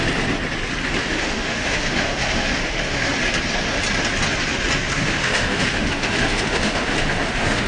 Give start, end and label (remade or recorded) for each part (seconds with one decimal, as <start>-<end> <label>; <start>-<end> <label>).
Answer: 0.0-1.0 recorded; 1.0-3.1 remade; 3.1-4.9 recorded; 4.9-7.7 remade